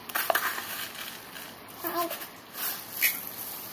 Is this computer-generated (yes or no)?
no